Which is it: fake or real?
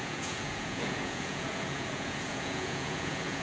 fake